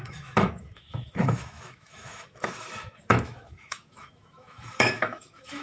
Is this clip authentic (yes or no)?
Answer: no